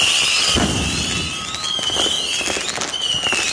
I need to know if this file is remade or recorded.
recorded